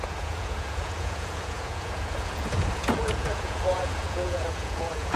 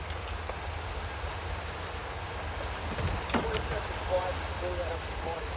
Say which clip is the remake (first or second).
first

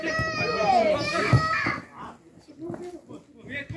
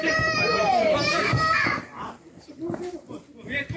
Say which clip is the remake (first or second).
second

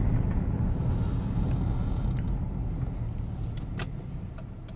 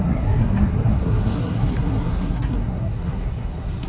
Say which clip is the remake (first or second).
second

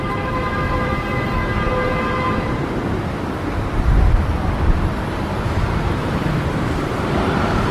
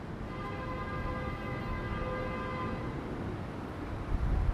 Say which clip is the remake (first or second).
first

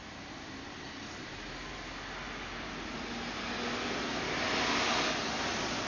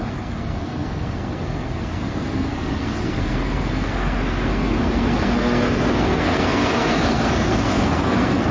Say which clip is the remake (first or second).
second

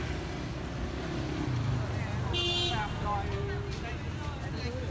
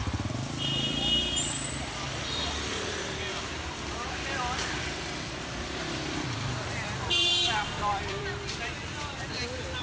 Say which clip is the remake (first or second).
second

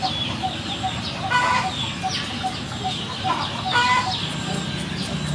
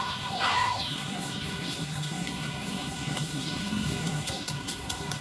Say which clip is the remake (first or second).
second